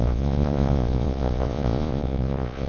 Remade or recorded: remade